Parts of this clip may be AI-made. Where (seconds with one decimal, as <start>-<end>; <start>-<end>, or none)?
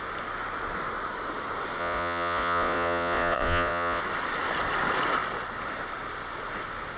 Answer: 1.8-4.0